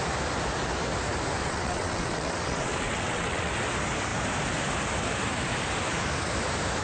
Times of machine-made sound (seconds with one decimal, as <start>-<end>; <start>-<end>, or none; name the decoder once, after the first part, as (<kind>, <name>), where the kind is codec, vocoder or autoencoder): 1.4-3.5 (vocoder, WaveNeXt)